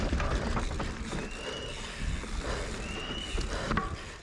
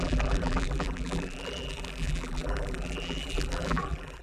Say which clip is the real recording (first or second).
first